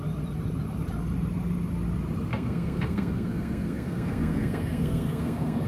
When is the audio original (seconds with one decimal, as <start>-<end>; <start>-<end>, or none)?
0.0-2.3